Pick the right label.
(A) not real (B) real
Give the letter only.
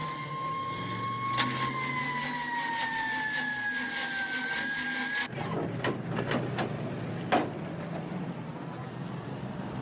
B